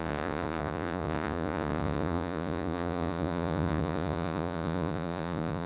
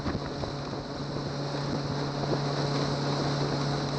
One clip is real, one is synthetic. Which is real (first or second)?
second